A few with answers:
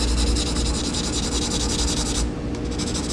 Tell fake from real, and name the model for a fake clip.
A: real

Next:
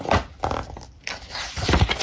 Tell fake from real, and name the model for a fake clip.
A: real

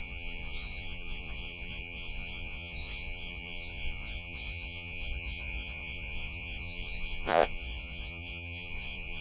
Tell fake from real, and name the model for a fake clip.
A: fake, vocoder, Vocos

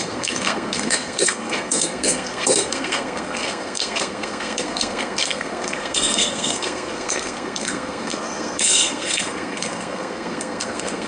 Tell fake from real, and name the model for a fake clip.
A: fake, codec, SNAC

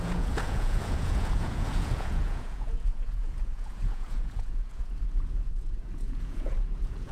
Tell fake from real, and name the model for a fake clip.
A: fake, vocoder, Vocos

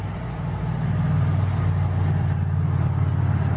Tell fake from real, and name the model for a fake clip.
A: real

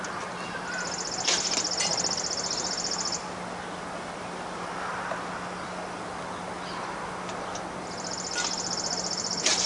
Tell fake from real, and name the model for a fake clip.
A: real